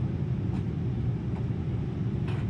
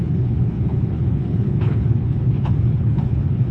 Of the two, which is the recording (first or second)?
first